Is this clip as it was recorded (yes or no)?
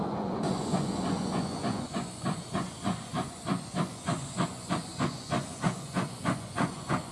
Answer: no